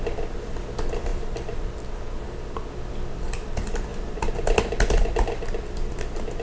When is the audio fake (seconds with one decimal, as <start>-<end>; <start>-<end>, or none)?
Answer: none